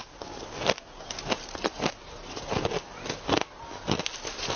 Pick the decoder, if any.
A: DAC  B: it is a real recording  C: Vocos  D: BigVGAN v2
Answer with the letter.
B